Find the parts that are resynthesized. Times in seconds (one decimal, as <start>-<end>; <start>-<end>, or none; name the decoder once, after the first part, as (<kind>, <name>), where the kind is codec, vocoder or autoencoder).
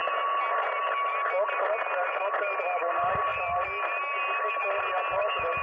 none